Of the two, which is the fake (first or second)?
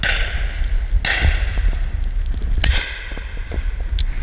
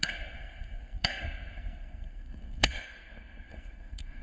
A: second